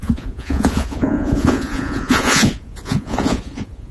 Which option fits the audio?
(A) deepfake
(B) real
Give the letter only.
A